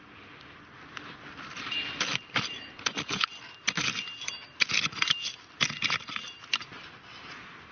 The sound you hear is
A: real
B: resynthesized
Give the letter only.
A